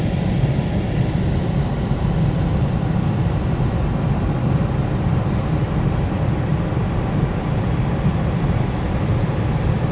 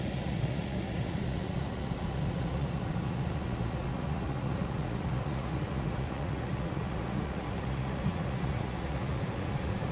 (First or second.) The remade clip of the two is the second